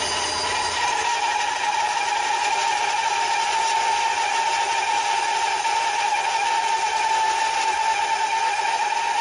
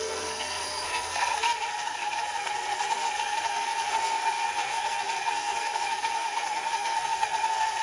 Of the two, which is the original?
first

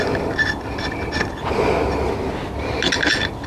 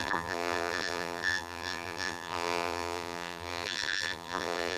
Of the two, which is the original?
first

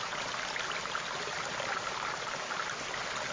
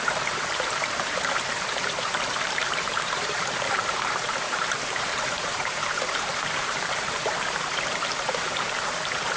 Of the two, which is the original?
first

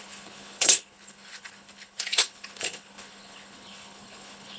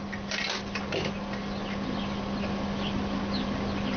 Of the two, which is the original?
second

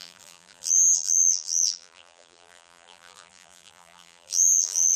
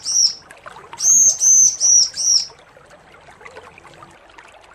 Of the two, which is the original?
second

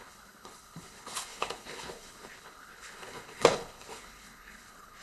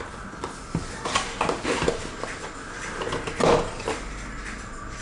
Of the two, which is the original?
second